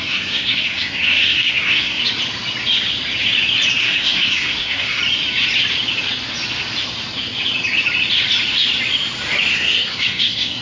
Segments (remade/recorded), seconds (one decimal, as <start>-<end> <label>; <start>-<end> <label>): 0.0-2.0 remade; 2.0-3.8 recorded; 3.8-5.0 remade; 5.0-9.5 recorded; 9.5-10.6 remade